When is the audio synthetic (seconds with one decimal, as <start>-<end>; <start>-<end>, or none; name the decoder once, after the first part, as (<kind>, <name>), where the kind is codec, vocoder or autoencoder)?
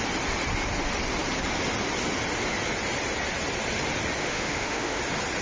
4.2-5.0 (autoencoder, DAC-VAE)